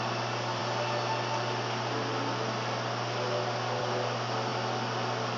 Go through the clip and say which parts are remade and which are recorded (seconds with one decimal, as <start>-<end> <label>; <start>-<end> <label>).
0.0-5.4 recorded